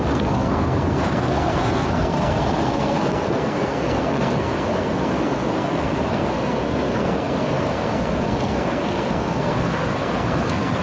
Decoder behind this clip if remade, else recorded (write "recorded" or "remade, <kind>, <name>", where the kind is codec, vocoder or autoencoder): remade, codec, SNAC